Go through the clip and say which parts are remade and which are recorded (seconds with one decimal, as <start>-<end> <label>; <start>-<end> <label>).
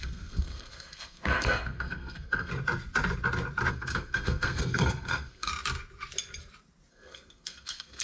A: 0.0-2.5 remade; 2.5-3.7 recorded; 3.7-5.5 remade; 5.5-6.9 recorded; 6.9-8.0 remade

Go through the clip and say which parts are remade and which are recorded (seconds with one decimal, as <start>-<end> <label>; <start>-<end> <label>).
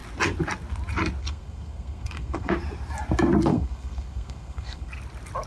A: 0.0-1.2 recorded; 1.2-2.5 remade; 2.5-3.5 recorded; 3.5-4.9 remade; 4.9-5.5 recorded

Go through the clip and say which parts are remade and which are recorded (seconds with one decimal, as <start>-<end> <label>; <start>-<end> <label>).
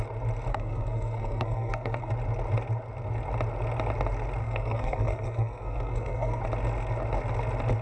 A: 0.0-0.5 recorded; 0.5-2.1 remade; 2.1-4.4 recorded; 4.4-6.4 remade; 6.4-7.8 recorded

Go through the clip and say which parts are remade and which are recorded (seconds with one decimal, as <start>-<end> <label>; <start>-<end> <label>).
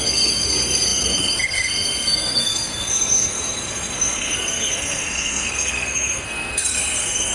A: 0.0-7.3 remade